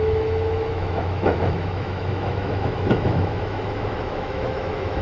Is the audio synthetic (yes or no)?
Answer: yes